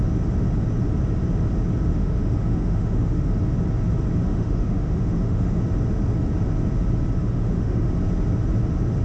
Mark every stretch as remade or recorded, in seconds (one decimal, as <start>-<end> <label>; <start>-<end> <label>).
0.0-1.9 recorded; 1.9-3.3 remade; 3.3-4.3 recorded; 4.3-5.6 remade; 5.6-7.2 recorded; 7.2-7.9 remade; 7.9-9.0 recorded